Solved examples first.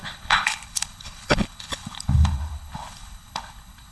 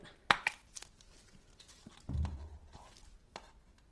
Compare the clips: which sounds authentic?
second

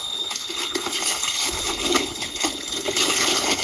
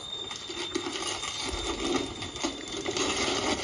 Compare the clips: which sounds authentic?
second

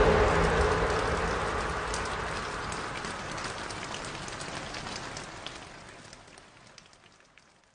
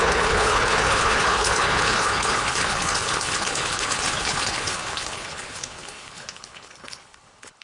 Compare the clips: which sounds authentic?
first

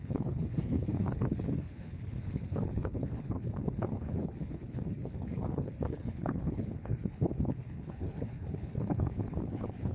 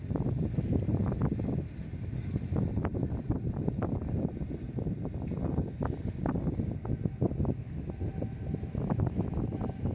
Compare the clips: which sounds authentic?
second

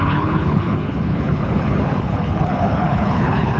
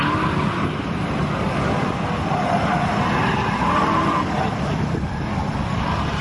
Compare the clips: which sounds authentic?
second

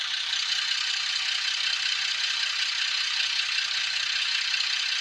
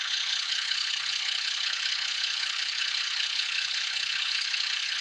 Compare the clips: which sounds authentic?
first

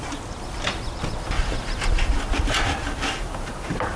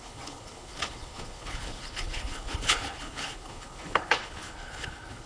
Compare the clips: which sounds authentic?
first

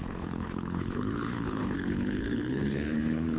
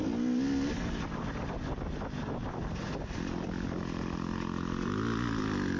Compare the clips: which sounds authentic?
second